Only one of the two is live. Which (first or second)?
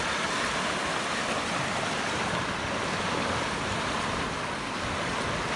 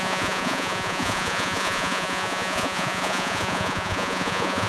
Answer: first